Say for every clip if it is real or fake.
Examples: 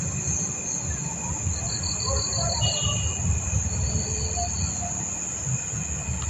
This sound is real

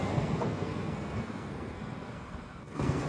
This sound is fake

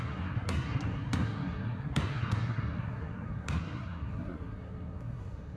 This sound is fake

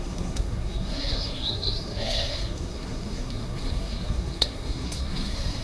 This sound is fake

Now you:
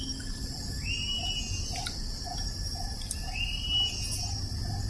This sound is real